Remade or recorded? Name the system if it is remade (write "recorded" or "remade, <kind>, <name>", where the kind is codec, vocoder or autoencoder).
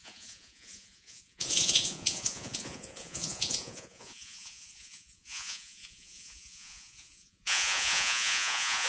remade, vocoder, Vocos